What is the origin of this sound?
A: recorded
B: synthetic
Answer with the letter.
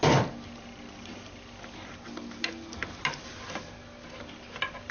A